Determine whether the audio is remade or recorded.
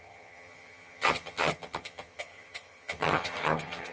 remade